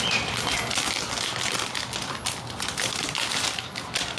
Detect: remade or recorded recorded